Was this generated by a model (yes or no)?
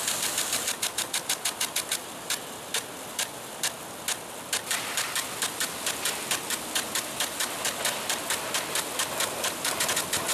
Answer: no